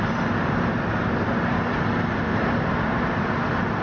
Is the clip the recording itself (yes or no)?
yes